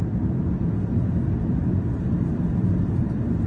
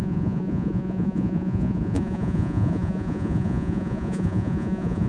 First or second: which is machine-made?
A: second